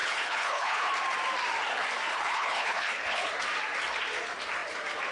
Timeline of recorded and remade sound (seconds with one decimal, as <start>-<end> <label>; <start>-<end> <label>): 0.0-0.9 remade; 0.9-2.1 recorded; 2.1-3.3 remade; 3.3-5.1 recorded